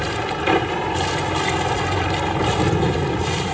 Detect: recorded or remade recorded